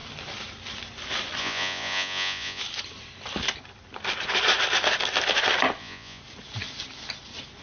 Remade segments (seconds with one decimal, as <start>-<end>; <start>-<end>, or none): 1.4-2.6; 5.8-6.2